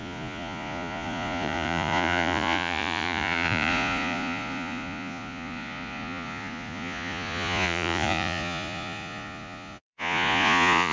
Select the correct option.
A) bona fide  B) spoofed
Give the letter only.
B